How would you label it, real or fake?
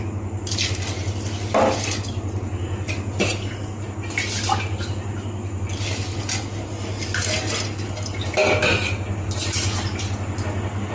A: real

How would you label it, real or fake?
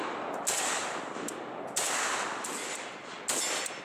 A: real